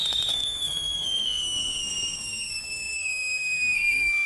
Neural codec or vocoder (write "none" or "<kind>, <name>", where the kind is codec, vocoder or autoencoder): codec, SNAC